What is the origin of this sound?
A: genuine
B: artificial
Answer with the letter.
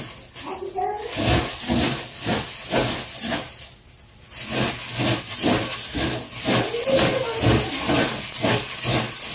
A